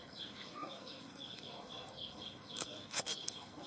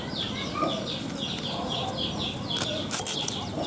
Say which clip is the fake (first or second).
first